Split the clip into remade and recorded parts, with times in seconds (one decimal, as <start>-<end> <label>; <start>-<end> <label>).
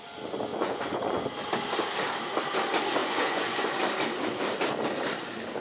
0.0-0.5 recorded; 0.5-1.2 remade; 1.2-3.0 recorded; 3.0-3.8 remade; 3.8-5.6 recorded